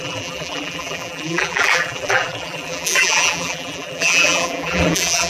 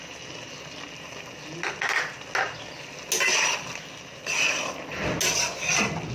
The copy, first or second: first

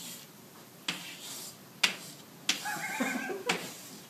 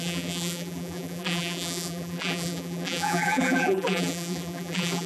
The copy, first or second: second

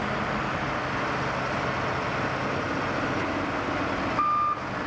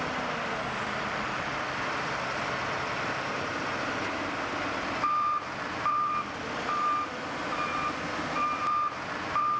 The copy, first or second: second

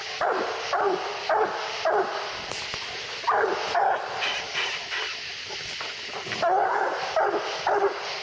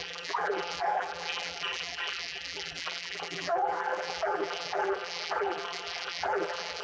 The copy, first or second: second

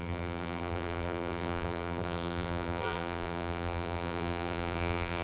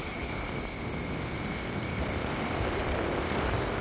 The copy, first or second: first